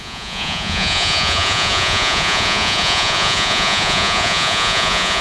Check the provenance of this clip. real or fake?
fake